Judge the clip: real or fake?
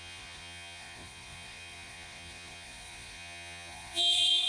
fake